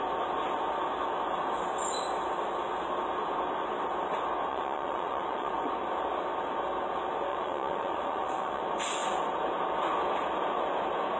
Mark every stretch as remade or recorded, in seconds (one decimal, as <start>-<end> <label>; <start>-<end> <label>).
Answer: 0.0-4.5 recorded; 4.5-5.7 remade; 5.7-7.3 recorded; 7.3-8.6 remade; 8.6-11.2 recorded